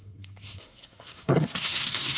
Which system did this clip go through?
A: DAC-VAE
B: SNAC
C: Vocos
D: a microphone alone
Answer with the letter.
B